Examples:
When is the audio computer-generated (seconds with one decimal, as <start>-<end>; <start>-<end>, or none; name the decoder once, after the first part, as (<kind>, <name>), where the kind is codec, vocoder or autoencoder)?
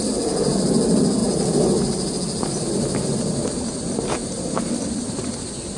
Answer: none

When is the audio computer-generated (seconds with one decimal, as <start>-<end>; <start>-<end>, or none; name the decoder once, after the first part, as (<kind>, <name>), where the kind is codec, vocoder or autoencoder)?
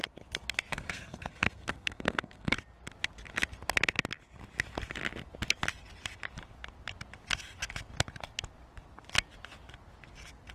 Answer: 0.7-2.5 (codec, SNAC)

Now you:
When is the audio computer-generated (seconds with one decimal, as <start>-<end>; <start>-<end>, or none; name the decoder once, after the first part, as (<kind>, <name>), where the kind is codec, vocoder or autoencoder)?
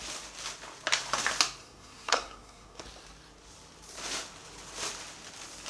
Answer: 1.6-2.8 (codec, SNAC)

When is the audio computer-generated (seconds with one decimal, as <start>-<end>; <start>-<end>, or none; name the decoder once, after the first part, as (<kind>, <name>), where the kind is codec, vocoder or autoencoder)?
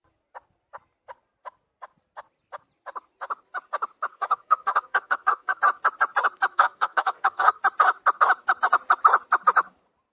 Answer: 4.1-5.6 (codec, SNAC); 6.5-7.6